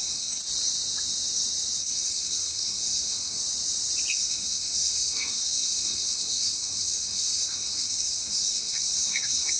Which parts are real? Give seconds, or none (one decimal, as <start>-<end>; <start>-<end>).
0.4-1.8; 3.4-4.1